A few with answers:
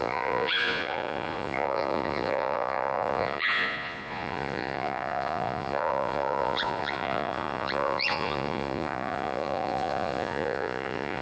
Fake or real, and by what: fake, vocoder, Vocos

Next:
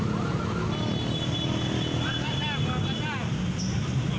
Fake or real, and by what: real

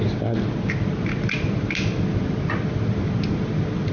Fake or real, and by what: real